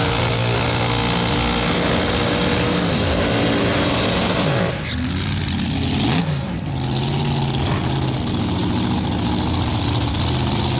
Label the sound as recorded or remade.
recorded